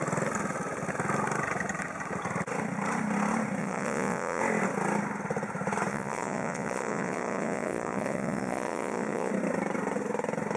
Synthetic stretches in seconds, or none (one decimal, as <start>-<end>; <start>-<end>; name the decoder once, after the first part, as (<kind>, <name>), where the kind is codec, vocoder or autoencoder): 3.6-4.4 (vocoder, Vocos); 5.9-9.3